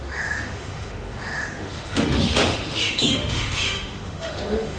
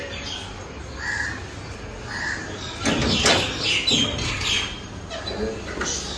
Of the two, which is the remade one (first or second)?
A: first